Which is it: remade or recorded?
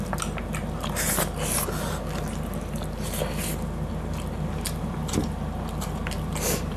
recorded